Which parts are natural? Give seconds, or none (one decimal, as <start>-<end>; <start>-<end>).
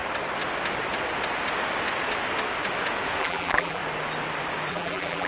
0.0-3.2; 3.8-4.7